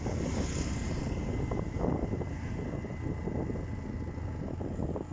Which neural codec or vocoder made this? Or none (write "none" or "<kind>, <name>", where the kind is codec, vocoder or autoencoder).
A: none